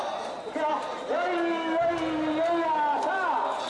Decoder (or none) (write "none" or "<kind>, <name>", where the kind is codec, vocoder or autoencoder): none